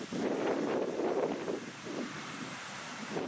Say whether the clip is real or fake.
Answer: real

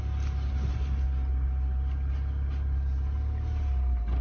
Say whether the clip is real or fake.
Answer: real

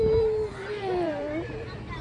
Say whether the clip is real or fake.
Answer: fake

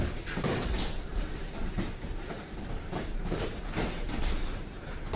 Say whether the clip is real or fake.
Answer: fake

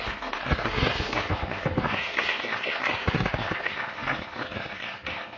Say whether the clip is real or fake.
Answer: fake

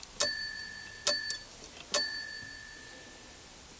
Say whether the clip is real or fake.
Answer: real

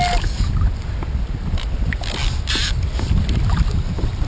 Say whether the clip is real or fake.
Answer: real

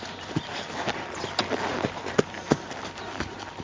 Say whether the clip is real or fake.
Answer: real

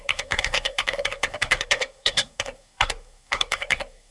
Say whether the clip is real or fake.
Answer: fake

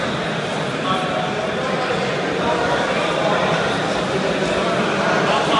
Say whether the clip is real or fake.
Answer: real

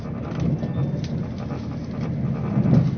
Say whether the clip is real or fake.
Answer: real